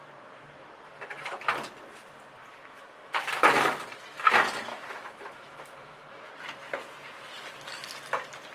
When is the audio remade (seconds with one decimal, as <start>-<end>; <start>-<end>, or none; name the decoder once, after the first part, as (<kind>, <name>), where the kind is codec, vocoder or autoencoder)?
2.4-3.2 (autoencoder, DAC-VAE); 4.7-6.3